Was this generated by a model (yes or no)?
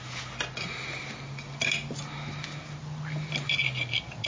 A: no